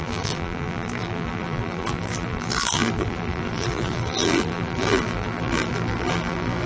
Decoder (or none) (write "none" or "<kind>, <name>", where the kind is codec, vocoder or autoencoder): vocoder, BigVGAN v2